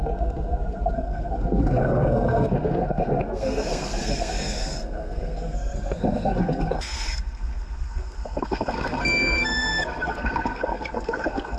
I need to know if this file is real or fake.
fake